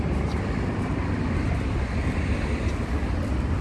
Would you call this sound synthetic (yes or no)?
no